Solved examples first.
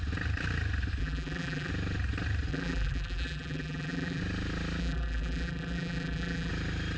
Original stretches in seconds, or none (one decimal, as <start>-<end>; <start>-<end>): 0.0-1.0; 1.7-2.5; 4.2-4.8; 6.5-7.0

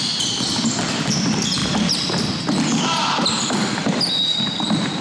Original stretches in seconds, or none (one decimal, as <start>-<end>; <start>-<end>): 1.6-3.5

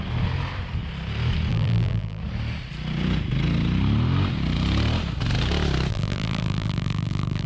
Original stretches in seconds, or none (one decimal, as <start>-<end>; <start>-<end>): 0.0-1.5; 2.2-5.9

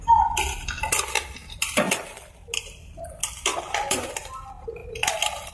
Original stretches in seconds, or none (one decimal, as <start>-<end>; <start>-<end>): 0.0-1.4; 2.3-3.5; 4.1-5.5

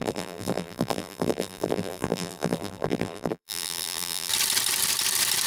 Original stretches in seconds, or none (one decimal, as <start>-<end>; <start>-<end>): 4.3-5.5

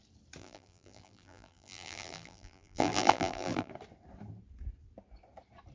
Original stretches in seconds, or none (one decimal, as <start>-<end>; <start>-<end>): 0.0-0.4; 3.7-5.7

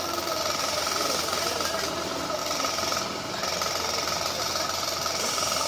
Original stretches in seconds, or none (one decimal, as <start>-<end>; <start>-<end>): 2.4-4.4

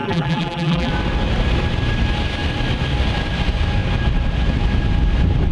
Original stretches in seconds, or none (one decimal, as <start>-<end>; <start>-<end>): 0.9-5.5